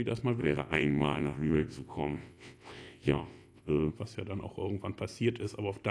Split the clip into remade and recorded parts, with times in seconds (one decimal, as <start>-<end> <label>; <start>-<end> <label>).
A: 0.0-0.4 recorded; 0.4-3.9 remade; 3.9-5.9 recorded